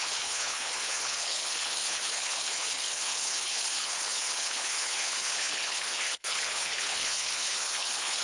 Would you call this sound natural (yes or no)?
no